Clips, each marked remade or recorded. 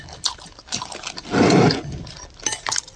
recorded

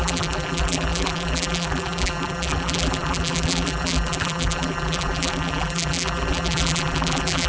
remade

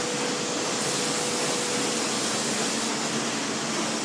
recorded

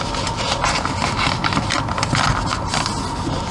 recorded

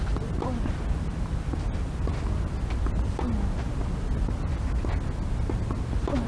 recorded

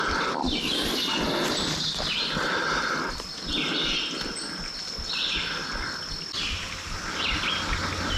recorded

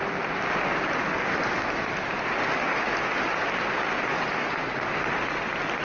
recorded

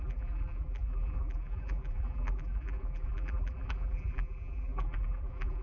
remade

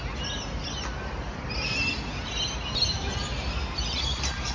recorded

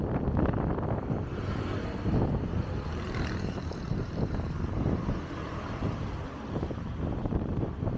remade